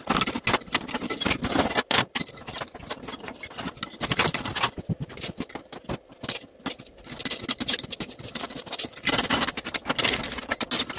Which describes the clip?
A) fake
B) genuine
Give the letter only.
B